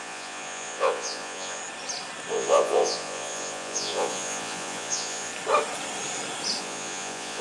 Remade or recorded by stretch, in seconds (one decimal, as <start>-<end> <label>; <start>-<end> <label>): 0.0-1.6 remade; 1.6-2.3 recorded; 2.3-5.3 remade; 5.3-6.6 recorded; 6.6-7.4 remade